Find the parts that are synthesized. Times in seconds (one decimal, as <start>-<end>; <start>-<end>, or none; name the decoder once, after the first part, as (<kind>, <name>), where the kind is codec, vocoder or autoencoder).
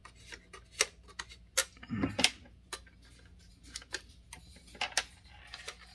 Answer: none